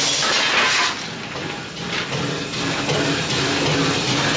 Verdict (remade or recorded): recorded